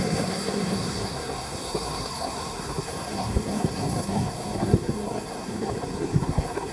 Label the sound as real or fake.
fake